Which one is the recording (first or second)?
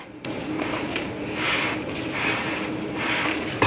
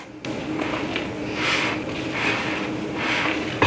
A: second